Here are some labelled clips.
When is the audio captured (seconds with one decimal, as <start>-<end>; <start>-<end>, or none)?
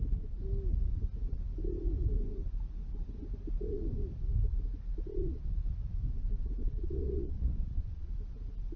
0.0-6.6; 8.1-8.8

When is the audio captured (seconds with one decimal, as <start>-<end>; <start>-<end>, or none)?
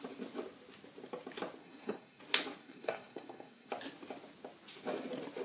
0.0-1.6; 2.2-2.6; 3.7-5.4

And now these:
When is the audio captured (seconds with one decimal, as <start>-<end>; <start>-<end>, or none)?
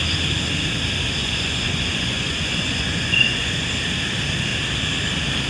0.0-1.2; 3.7-5.5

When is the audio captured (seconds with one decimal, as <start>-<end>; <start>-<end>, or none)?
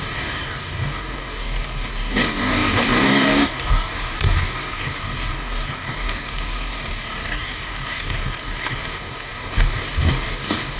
none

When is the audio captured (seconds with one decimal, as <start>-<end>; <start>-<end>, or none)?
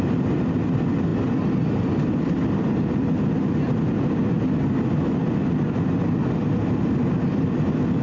0.0-8.0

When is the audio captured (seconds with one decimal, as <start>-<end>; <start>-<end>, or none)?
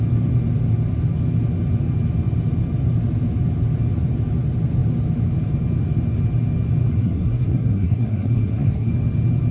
0.0-6.9; 8.9-9.5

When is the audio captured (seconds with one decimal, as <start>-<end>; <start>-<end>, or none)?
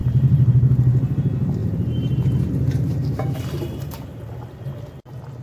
0.5-1.6; 4.8-5.4